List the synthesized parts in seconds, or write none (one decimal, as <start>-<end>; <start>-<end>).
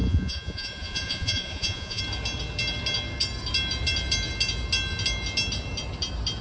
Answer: 0.0-2.0